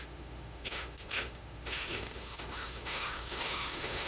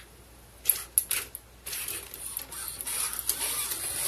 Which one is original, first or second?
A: second